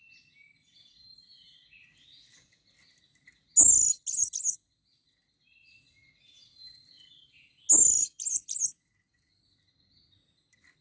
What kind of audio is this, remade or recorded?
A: recorded